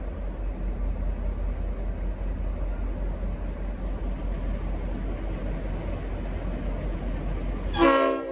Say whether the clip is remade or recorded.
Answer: recorded